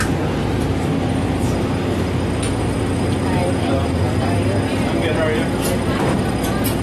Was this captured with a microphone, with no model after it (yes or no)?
yes